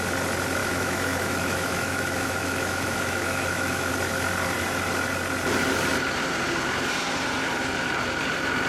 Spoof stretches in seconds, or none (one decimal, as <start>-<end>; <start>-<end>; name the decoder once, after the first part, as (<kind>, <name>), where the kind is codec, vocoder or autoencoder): 0.6-3.9 (autoencoder, DAC-VAE)